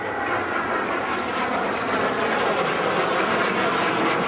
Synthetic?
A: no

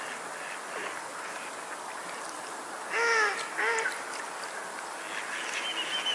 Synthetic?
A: no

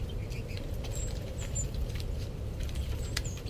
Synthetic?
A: yes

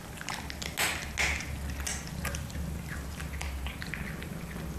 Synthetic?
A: no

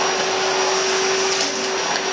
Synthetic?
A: no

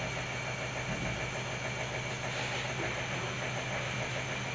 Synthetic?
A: no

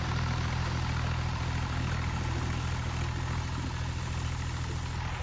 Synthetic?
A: no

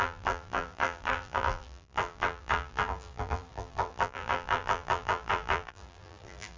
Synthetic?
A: yes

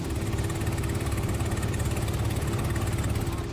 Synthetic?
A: no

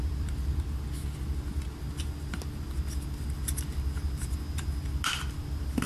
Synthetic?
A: no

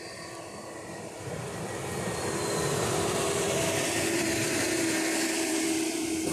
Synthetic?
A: yes